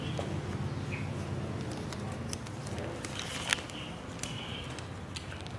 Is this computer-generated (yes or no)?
no